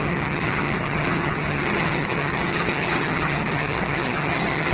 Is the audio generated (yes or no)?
yes